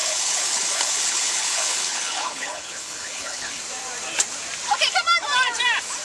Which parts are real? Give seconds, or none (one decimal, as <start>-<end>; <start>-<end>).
3.6-6.0